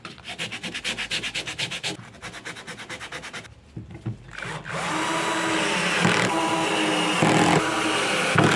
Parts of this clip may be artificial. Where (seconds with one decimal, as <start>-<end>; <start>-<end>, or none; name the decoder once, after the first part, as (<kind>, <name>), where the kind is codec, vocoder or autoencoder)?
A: none